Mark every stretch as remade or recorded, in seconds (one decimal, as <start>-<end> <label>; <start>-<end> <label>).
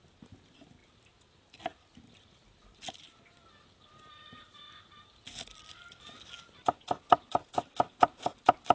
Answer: 0.0-8.7 recorded